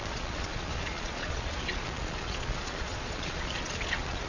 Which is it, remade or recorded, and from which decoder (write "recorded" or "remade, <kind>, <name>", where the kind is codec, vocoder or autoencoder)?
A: remade, vocoder, Vocos